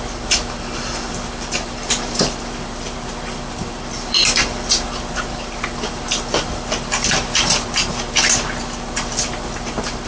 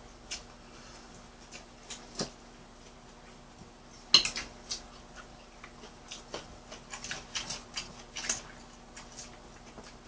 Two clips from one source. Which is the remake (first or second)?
first